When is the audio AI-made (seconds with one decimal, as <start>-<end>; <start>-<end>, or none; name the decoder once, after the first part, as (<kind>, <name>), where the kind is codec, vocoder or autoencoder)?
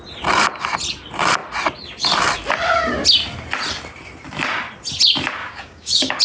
5.4-6.2 (codec, DAC)